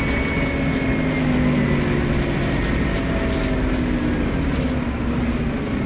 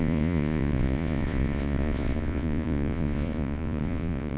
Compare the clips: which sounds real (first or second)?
first